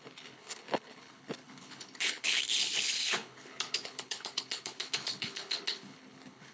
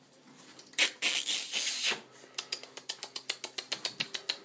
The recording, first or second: second